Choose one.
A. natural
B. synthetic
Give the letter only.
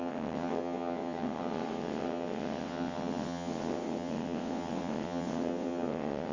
B